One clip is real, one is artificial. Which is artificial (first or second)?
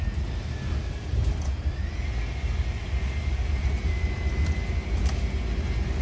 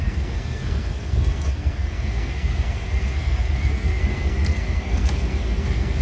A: second